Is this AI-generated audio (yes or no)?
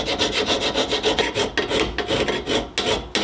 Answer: no